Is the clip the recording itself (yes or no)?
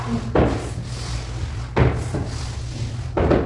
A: yes